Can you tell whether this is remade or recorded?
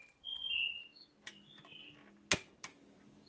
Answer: recorded